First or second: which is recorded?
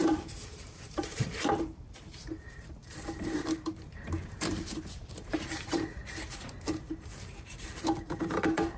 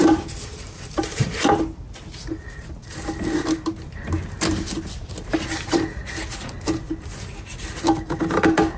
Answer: second